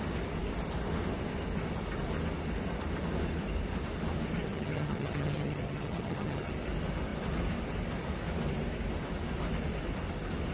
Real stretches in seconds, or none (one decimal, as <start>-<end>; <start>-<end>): 0.0-4.4; 6.5-10.5